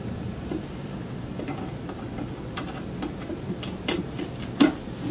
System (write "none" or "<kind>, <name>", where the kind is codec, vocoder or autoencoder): none